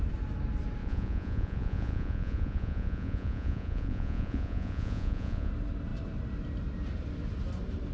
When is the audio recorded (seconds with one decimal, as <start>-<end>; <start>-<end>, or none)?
0.0-0.8; 5.5-7.9